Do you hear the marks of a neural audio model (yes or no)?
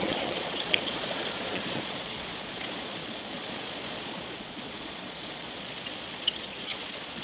yes